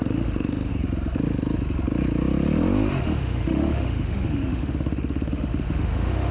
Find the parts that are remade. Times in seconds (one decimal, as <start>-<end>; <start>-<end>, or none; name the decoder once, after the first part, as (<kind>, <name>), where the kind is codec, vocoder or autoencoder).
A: 0.0-0.7 (autoencoder, DAC-VAE); 3.0-6.3